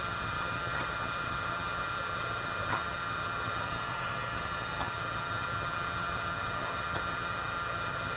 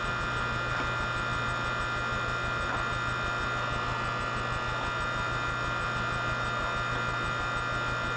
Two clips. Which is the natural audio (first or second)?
second